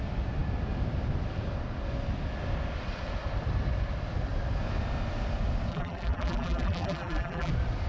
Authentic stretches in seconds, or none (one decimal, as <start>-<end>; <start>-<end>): 0.0-5.7; 7.5-7.9